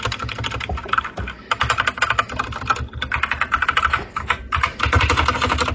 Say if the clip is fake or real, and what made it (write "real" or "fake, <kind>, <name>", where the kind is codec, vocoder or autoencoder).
real